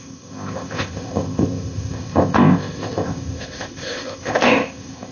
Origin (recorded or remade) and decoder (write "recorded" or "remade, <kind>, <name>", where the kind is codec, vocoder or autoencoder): remade, codec, ZipCodec